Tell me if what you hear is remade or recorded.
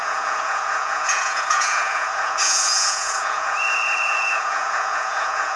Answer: remade